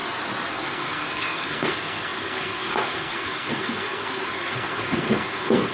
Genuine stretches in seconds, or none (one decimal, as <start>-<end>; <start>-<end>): 0.0-0.5